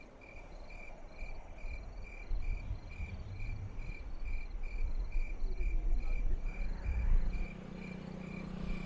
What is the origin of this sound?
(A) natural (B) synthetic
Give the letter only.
A